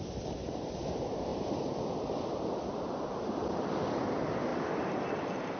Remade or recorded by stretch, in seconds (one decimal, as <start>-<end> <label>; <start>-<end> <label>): 0.0-1.3 remade; 1.3-3.2 recorded; 3.2-5.6 remade